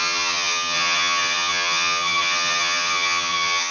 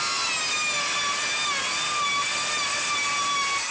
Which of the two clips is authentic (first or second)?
second